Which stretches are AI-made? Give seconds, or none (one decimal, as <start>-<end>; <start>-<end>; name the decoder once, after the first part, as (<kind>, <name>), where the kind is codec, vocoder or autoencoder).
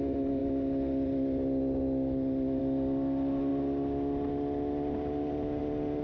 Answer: none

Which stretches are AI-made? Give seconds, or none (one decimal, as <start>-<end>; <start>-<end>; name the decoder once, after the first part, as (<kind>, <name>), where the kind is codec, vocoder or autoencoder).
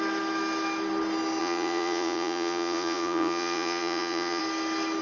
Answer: 1.4-4.4 (vocoder, Vocos)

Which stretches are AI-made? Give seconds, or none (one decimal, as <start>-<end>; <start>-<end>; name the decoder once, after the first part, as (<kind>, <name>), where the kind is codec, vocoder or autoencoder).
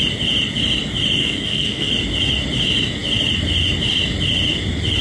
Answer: 1.2-1.9 (codec, SNAC)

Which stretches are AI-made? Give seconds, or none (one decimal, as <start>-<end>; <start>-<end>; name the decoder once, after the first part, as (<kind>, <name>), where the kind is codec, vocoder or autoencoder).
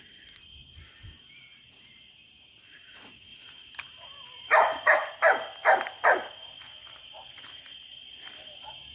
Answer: none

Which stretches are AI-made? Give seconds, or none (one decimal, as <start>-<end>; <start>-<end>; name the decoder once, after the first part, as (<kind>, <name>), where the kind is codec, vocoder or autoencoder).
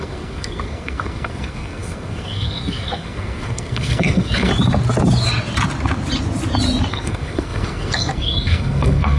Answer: 0.0-4.5 (codec, SNAC); 6.9-9.2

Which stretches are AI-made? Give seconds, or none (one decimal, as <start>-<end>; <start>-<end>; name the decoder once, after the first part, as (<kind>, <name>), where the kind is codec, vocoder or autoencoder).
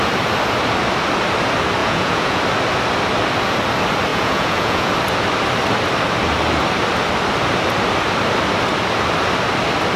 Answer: 1.8-2.4 (vocoder, Vocos); 4.1-4.9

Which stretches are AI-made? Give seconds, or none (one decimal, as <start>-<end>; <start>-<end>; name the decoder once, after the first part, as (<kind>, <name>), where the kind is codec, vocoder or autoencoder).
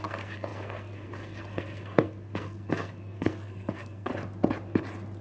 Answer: 0.0-4.1 (codec, SNAC)